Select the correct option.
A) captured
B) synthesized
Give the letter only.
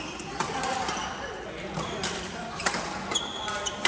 A